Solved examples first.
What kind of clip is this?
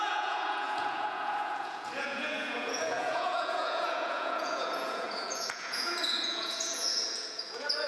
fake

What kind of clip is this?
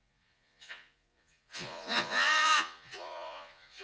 fake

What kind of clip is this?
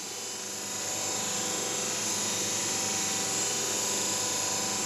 real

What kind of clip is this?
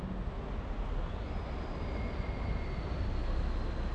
real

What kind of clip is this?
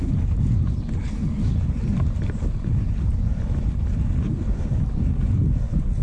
real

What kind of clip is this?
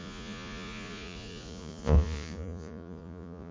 fake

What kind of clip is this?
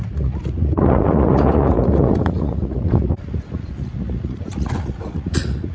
fake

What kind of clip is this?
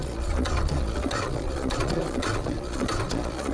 fake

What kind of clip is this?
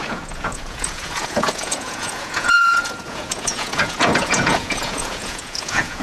fake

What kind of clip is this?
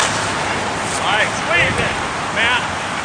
real